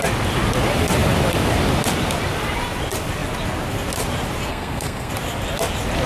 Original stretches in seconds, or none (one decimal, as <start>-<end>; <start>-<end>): 0.0-4.5; 5.1-6.1